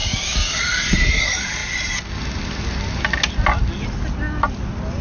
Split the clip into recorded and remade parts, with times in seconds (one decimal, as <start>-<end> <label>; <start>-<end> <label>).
0.0-0.6 remade; 0.6-5.0 recorded